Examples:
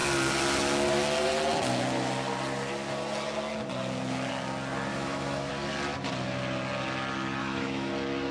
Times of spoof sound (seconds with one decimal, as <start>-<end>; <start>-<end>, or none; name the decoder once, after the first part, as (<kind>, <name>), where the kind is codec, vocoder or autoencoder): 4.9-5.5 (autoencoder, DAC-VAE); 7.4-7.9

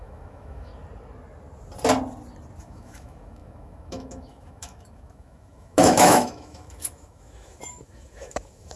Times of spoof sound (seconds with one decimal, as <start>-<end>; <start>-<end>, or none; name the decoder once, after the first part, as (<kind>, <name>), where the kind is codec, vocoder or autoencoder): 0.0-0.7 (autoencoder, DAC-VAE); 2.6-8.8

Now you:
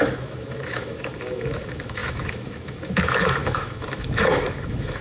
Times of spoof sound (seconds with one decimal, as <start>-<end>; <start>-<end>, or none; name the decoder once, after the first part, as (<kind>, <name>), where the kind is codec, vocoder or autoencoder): 0.0-5.0 (autoencoder, DAC-VAE)

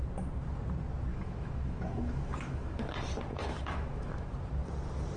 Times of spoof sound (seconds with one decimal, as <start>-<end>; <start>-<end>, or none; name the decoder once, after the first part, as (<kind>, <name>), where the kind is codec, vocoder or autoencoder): 1.1-2.9 (autoencoder, DAC-VAE); 3.3-4.3

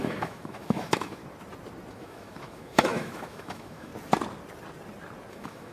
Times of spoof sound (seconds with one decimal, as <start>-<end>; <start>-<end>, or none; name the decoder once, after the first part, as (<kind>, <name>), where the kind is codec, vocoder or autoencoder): 0.0-1.2 (autoencoder, DAC-VAE); 1.9-3.9; 5.3-5.7

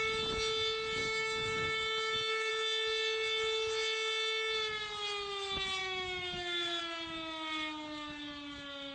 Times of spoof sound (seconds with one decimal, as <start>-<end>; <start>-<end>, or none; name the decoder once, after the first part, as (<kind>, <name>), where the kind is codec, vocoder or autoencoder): 1.0-2.5 (autoencoder, DAC-VAE); 5.8-6.8

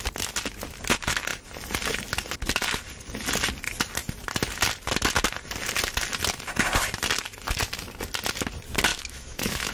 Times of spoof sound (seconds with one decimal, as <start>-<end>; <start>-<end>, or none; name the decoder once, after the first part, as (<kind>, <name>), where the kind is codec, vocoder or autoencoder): 8.9-9.7 (autoencoder, DAC-VAE)

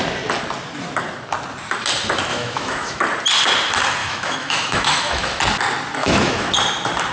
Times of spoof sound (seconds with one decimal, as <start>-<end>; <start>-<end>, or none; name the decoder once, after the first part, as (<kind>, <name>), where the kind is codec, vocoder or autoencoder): 2.3-3.0 (autoencoder, DAC-VAE); 4.0-5.4; 6.0-6.5